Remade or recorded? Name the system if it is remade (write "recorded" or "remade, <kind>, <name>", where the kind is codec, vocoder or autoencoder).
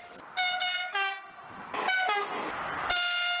recorded